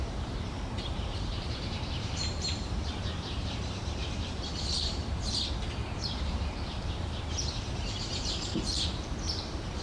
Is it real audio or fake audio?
fake